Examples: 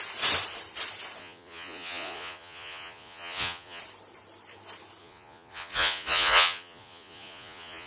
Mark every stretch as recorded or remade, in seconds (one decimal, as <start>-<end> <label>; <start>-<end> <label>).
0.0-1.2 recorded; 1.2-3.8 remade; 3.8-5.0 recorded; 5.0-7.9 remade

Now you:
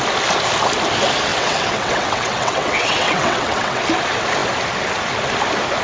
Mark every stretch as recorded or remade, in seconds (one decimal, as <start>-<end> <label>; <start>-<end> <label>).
0.0-1.3 recorded; 1.3-3.8 remade; 3.8-5.8 recorded

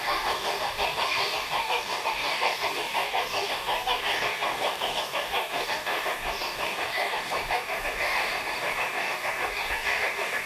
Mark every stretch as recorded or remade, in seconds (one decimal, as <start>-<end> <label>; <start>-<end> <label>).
0.0-10.5 remade

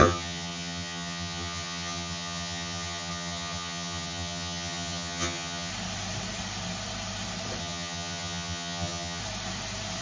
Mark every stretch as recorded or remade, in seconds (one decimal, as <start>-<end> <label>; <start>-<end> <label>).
0.0-5.7 remade; 5.7-7.6 recorded; 7.6-9.2 remade; 9.2-10.0 recorded